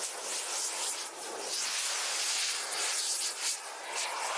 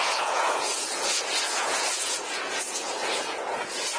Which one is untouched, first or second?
first